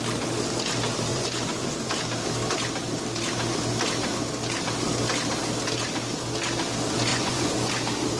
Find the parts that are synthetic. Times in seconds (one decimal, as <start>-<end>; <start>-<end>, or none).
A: 1.1-1.9; 7.1-7.7